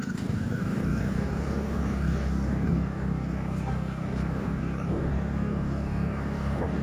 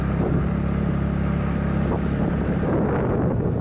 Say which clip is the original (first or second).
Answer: second